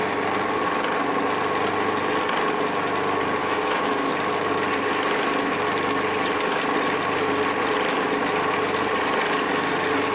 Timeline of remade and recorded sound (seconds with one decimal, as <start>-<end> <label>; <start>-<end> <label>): 0.0-3.4 recorded; 3.4-4.1 remade; 4.1-10.1 recorded